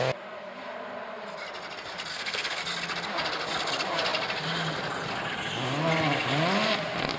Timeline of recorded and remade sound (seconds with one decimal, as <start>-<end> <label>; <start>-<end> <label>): 0.0-2.1 recorded; 2.1-2.6 remade; 2.6-7.2 recorded